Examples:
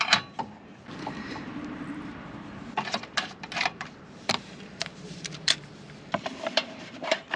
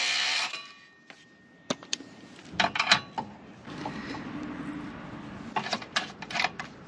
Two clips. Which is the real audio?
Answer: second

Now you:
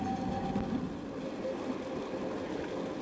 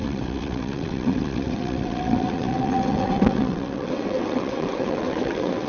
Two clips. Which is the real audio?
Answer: first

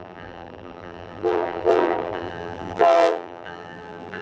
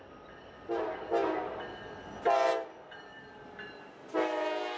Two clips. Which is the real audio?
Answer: second